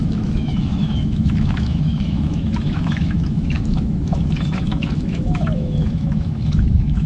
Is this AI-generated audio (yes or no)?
yes